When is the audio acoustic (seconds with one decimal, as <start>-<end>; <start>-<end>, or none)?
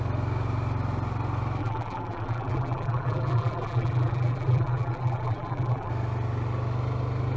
0.0-1.6; 5.9-7.4